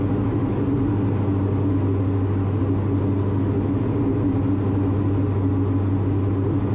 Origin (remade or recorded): recorded